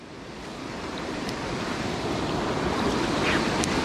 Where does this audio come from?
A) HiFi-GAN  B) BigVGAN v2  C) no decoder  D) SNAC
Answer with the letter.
C